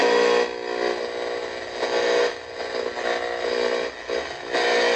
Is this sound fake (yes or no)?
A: no